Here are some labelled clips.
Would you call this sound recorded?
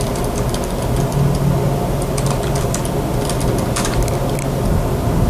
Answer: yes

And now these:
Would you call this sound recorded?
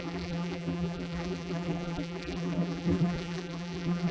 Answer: no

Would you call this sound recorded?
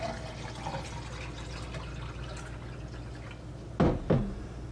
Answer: yes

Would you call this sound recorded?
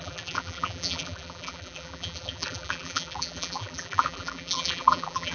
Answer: no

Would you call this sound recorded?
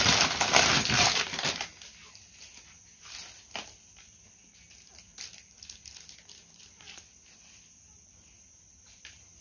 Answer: yes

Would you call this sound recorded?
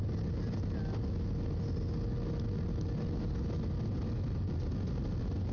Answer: yes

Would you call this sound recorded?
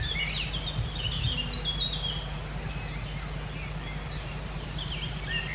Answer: yes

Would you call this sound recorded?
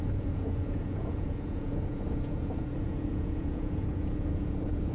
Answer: no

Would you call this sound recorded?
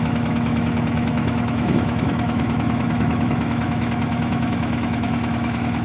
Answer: no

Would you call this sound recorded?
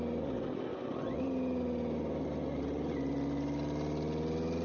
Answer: yes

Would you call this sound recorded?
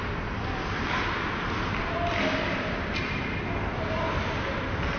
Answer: yes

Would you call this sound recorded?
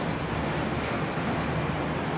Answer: yes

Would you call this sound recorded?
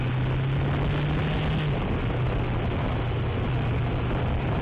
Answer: yes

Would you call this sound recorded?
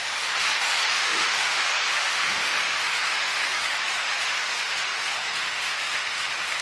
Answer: no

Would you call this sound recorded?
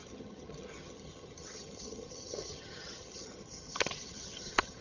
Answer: no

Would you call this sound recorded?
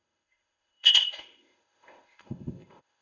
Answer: no